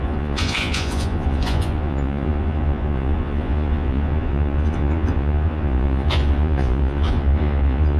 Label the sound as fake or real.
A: fake